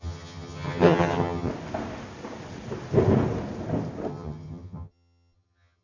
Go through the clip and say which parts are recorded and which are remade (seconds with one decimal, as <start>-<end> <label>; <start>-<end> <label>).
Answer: 0.0-1.5 remade; 1.5-4.1 recorded; 4.1-5.8 remade